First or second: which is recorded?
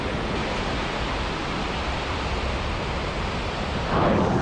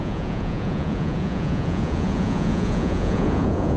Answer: first